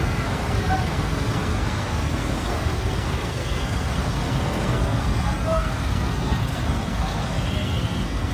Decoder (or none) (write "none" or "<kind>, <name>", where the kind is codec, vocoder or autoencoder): codec, SNAC